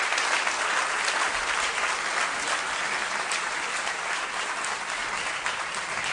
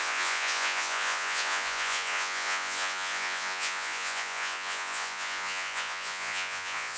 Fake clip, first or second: second